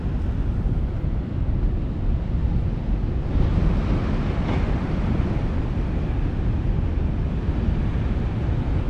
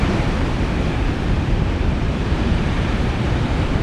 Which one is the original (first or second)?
first